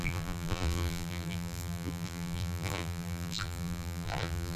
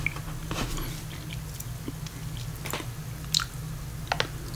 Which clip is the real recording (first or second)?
second